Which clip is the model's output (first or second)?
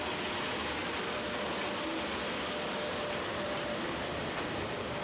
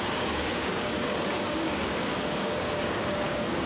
second